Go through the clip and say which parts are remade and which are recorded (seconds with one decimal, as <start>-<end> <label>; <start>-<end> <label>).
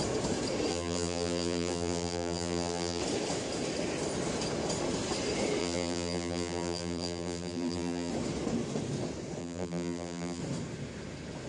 0.0-0.7 recorded; 0.7-3.0 remade; 3.0-5.6 recorded; 5.6-8.1 remade; 8.1-9.4 recorded; 9.4-10.4 remade; 10.4-11.5 recorded